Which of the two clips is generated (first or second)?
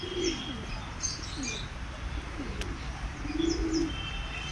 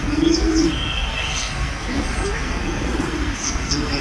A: second